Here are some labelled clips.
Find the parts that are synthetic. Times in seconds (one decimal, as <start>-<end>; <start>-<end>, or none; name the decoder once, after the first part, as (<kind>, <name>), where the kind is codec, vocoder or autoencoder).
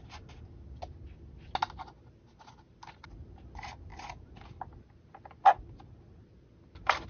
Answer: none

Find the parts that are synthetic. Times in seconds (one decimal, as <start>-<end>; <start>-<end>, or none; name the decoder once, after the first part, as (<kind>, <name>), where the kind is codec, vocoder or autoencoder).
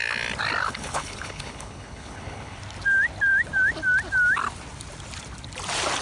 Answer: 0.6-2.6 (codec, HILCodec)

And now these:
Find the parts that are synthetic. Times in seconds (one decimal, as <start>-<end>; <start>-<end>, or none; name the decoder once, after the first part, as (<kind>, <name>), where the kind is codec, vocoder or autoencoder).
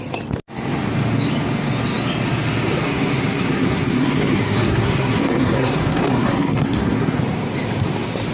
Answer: 2.8-7.2 (codec, SNAC)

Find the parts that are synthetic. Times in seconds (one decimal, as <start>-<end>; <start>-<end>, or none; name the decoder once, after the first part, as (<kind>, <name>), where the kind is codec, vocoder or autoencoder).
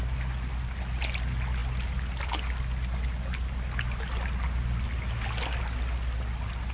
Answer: none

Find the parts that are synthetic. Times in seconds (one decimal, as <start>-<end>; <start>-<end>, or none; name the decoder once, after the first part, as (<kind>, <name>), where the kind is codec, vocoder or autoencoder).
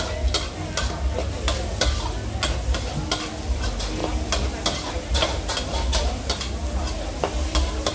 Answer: none